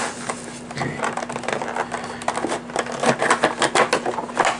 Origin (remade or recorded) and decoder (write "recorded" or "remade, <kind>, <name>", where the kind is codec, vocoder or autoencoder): recorded